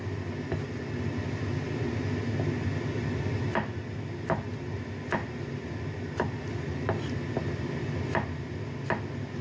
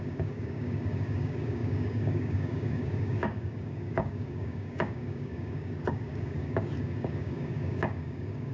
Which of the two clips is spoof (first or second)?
second